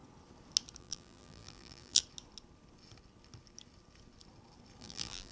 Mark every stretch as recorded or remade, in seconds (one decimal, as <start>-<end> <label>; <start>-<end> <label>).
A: 0.0-0.8 recorded; 0.8-2.0 remade; 2.0-4.8 recorded; 4.8-5.3 remade

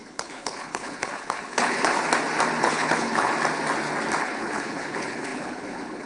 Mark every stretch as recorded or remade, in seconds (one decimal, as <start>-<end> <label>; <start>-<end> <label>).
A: 0.0-1.9 remade; 1.9-2.6 recorded; 2.6-3.3 remade; 3.3-4.2 recorded; 4.2-6.1 remade

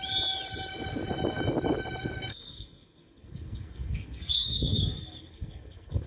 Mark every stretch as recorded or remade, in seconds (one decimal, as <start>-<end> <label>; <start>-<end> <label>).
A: 0.0-2.3 recorded; 2.3-6.1 remade

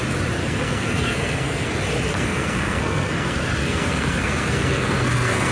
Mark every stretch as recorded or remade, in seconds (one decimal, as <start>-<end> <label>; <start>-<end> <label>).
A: 0.0-0.4 recorded; 0.4-1.7 remade; 1.7-2.1 recorded; 2.1-5.5 remade